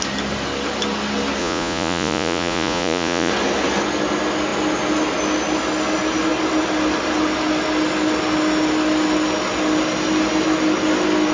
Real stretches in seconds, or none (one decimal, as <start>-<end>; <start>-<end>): 0.0-1.4; 3.3-11.3